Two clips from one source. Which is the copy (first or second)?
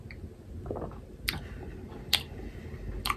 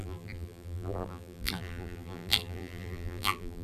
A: second